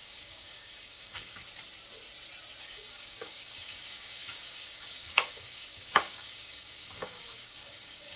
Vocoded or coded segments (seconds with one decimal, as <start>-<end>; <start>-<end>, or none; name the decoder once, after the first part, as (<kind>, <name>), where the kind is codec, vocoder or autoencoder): 0.0-1.4 (codec, DAC); 2.6-8.2